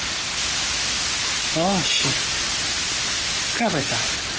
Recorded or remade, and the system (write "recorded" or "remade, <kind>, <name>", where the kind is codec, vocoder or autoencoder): recorded